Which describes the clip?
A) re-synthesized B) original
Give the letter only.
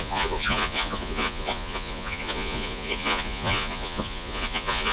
A